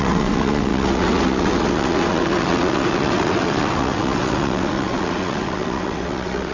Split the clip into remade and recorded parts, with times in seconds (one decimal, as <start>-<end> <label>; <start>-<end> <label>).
0.0-6.5 remade